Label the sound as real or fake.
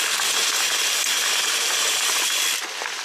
real